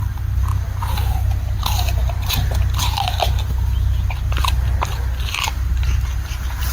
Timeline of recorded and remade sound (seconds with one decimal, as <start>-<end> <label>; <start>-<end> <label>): 0.0-6.7 recorded